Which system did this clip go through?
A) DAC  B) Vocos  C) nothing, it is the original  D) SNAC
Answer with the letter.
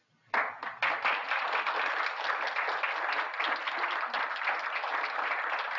C